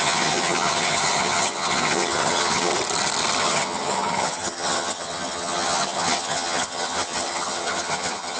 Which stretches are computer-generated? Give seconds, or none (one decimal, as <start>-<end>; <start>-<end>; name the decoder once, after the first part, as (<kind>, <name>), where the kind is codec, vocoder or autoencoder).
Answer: 0.0-2.7 (vocoder, HiFi-GAN); 3.4-8.4

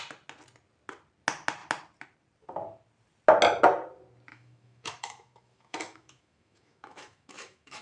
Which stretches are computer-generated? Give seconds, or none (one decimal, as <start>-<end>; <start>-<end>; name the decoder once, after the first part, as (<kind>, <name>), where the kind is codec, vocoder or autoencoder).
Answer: 4.3-7.8 (autoencoder, DAC-VAE)

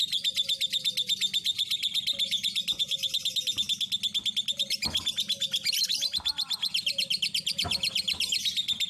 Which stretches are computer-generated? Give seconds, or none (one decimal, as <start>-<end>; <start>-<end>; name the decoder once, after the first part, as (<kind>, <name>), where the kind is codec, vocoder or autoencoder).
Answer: none